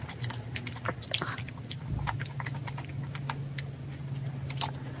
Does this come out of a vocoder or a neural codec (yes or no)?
no